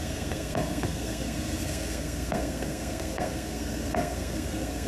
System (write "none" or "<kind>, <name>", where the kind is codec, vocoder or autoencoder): codec, SNAC